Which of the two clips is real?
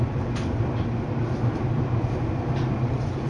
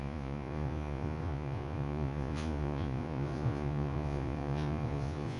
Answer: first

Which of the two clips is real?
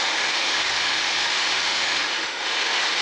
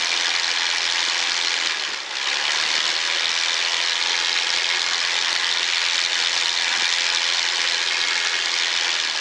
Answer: second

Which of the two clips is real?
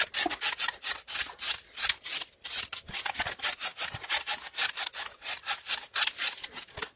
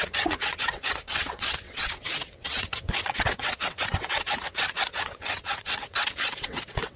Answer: first